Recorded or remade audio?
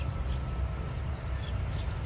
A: recorded